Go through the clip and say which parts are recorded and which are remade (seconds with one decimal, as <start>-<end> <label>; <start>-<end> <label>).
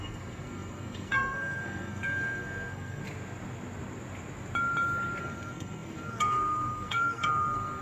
0.0-3.0 remade; 3.0-5.2 recorded; 5.2-7.8 remade